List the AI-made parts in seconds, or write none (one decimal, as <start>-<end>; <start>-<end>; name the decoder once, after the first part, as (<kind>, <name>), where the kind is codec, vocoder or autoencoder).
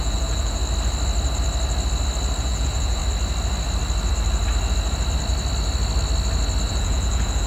0.0-0.6 (vocoder, Vocos); 2.4-3.0; 6.7-7.5